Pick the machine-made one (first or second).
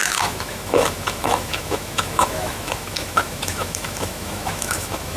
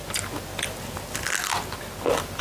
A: first